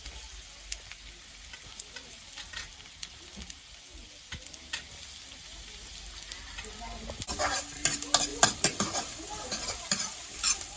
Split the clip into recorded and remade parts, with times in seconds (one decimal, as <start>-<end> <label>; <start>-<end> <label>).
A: 0.0-10.8 recorded